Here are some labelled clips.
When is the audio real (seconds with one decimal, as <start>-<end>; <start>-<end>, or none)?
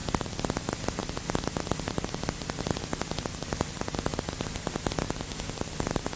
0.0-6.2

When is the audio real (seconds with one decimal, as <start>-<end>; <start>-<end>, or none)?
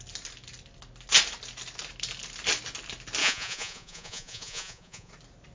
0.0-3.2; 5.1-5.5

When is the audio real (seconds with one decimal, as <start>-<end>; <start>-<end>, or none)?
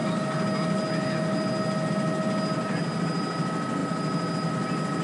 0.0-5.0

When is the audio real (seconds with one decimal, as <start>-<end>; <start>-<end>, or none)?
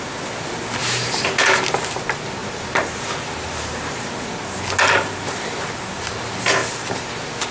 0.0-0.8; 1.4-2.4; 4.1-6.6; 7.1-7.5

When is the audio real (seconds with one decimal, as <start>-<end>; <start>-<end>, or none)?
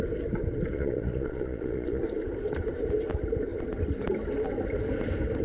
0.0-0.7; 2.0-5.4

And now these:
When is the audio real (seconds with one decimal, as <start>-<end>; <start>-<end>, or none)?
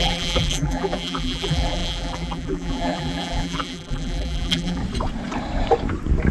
4.8-6.3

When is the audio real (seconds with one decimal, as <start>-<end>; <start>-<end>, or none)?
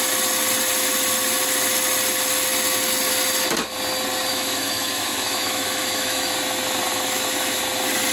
0.0-4.3; 6.3-6.9; 7.6-8.1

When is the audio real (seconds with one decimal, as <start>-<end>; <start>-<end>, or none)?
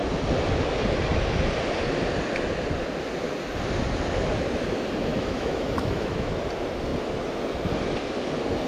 0.0-5.1; 6.3-8.7